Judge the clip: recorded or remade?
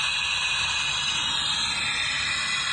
recorded